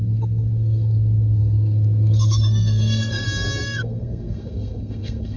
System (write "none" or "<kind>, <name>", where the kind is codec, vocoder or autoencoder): codec, SNAC